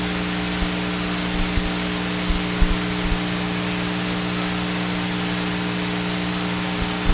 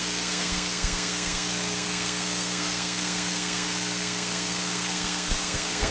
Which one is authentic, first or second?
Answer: first